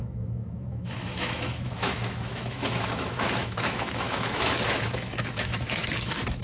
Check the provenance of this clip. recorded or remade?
remade